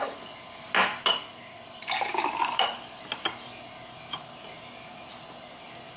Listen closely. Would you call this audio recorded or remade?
recorded